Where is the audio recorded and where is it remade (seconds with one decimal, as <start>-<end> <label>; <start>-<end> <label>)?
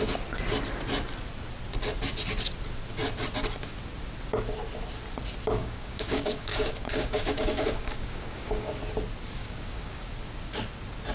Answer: 0.0-5.6 recorded; 5.6-8.8 remade; 8.8-9.4 recorded; 9.4-10.1 remade; 10.1-11.1 recorded